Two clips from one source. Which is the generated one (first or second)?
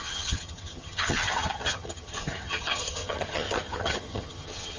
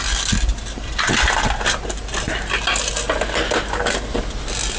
first